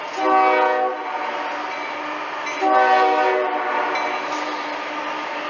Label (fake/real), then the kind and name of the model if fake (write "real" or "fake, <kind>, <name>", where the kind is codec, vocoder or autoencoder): real